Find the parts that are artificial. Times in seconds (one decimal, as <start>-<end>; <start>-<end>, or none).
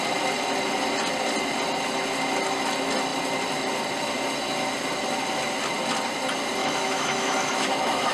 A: 6.6-8.1